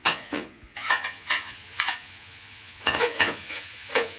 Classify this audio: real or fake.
fake